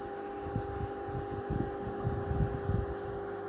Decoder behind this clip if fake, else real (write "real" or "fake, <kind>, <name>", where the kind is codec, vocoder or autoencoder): real